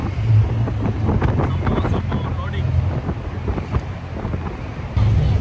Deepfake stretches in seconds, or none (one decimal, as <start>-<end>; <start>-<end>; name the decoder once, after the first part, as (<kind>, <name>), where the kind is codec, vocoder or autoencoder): none